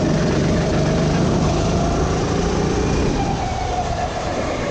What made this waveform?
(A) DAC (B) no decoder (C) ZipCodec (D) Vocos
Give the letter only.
B